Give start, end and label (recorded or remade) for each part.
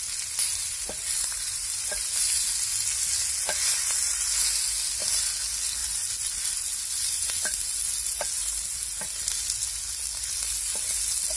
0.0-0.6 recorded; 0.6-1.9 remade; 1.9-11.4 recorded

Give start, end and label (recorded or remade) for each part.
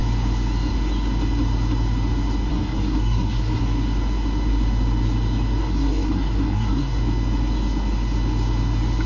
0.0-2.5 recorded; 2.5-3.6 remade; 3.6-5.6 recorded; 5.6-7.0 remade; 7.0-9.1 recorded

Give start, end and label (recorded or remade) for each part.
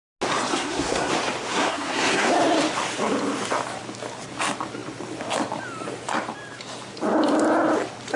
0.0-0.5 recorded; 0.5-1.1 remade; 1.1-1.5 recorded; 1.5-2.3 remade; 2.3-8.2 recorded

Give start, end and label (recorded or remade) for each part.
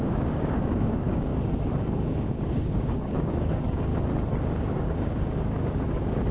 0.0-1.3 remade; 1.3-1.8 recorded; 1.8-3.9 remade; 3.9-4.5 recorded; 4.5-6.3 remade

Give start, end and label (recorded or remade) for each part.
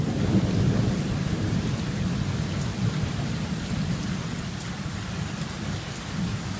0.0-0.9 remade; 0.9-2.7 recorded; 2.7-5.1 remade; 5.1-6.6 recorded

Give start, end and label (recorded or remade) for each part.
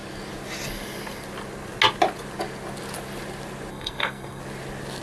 0.0-3.7 recorded; 3.7-4.4 remade; 4.4-5.0 recorded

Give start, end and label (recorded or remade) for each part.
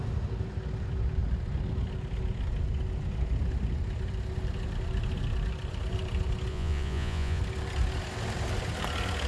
0.0-6.5 recorded; 6.5-7.4 remade; 7.4-9.3 recorded